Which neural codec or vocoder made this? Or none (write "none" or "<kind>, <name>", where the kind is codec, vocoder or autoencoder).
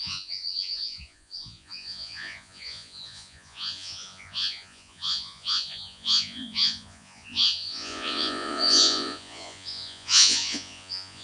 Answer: vocoder, Vocos